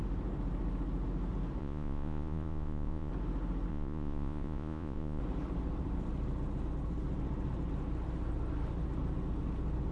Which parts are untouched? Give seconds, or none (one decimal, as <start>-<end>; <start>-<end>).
0.0-1.6; 3.1-3.7; 5.2-9.9

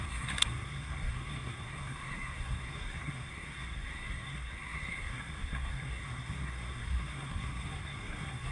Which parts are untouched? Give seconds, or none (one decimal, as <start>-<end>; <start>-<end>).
none

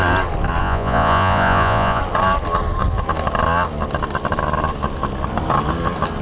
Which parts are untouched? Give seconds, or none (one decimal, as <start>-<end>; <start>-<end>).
0.0-0.6; 2.0-6.2

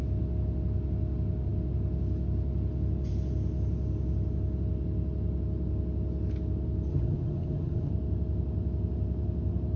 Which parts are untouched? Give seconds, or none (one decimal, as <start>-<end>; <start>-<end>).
0.0-6.9; 7.9-9.8

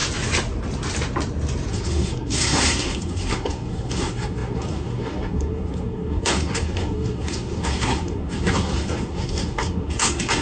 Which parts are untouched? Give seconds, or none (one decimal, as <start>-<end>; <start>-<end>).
0.0-1.7

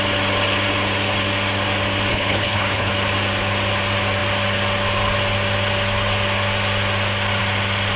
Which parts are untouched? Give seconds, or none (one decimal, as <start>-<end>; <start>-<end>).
0.0-2.1; 2.9-8.0

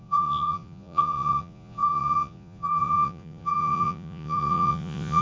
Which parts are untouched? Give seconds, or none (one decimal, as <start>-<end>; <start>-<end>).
none

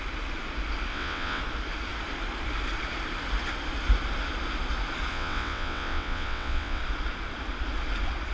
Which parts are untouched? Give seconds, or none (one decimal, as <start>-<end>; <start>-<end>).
0.0-0.9; 1.4-5.1; 6.8-8.3